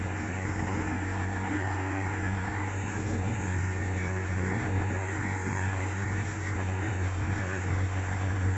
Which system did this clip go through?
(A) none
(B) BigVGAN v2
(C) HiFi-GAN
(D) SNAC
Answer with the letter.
D